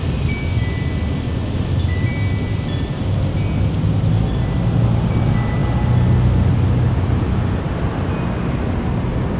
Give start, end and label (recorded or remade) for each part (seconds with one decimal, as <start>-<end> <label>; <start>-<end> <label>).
0.0-9.4 recorded